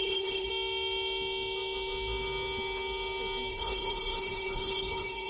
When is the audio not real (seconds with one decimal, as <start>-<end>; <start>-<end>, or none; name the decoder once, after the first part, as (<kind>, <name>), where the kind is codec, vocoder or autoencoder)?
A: 0.0-0.5 (codec, HILCodec); 3.5-5.3